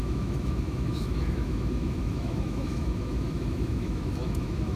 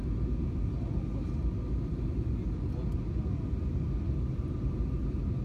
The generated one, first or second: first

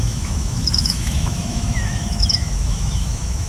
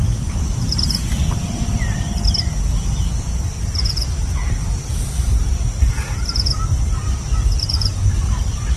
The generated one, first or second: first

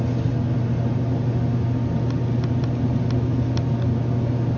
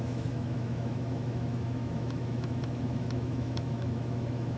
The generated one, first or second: second